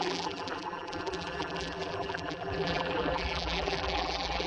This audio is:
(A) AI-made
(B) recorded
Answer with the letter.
A